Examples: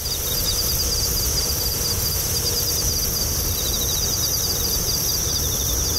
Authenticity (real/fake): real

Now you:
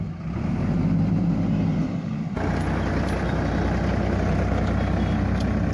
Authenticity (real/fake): real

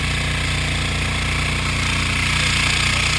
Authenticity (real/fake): real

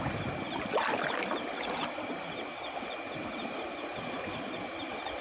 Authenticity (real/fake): real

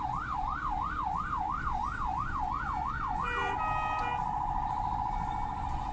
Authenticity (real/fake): real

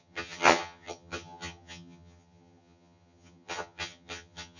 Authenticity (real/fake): fake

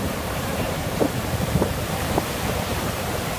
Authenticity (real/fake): fake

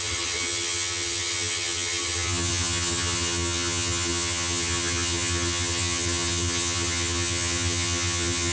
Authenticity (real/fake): fake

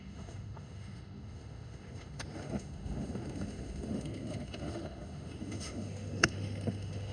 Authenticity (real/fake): fake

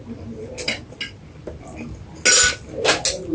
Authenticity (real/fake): real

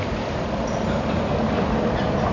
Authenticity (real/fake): real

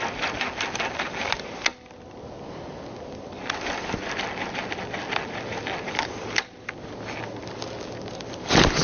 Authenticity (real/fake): real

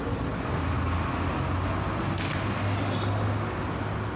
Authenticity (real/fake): real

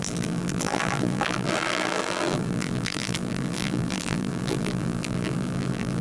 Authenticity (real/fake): fake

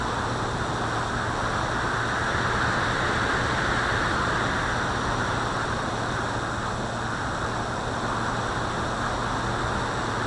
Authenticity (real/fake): real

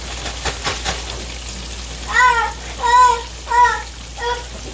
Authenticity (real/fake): real